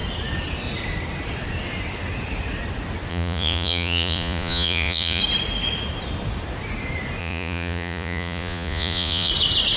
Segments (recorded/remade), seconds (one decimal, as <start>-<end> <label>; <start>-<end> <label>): 0.0-3.1 recorded; 3.1-5.2 remade; 5.2-7.2 recorded; 7.2-9.3 remade; 9.3-9.8 recorded